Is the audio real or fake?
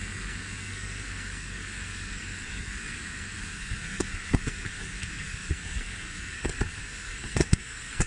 fake